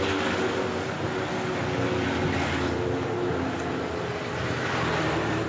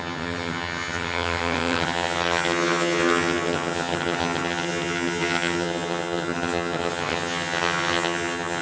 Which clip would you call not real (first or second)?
second